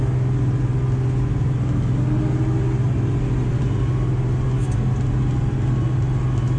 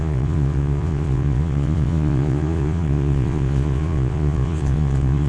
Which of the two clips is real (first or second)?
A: first